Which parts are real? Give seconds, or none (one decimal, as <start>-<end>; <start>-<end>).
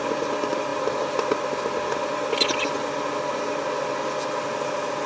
0.0-5.1